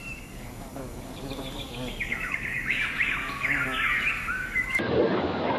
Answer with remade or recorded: remade